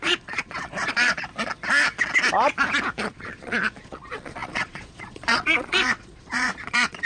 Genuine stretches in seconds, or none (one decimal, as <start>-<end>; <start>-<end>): 1.3-3.0